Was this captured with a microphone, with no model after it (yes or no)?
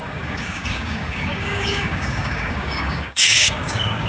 no